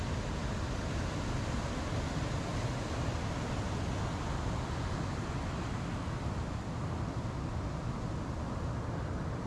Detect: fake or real real